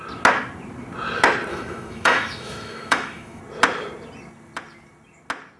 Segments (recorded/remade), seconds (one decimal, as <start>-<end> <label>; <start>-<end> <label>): 0.0-1.5 recorded; 1.5-3.4 remade; 3.4-5.6 recorded